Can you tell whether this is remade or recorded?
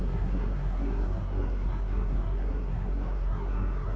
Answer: remade